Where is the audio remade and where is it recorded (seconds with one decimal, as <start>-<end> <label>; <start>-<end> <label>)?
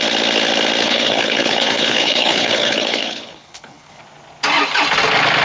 0.0-0.8 recorded; 0.8-4.0 remade; 4.0-5.4 recorded